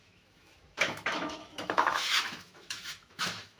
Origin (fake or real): fake